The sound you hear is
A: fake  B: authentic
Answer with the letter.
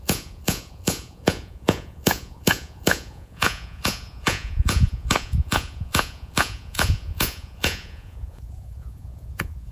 A